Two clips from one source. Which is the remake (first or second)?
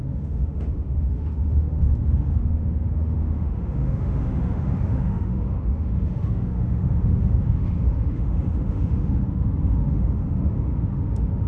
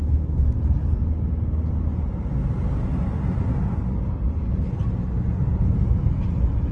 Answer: first